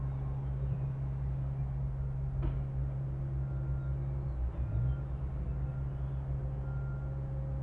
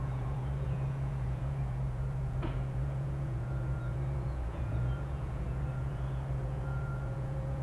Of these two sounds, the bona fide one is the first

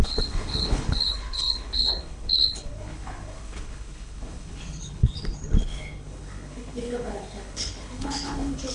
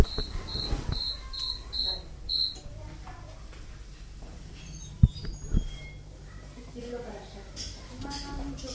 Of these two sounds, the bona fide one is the second